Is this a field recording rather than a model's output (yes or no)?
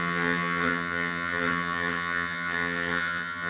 no